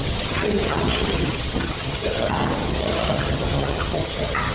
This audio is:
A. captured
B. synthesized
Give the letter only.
B